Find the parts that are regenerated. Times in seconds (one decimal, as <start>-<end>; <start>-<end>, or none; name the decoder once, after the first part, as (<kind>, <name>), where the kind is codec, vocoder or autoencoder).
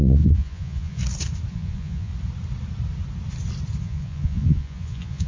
0.0-1.0 (vocoder, Vocos); 1.5-2.1; 3.8-5.3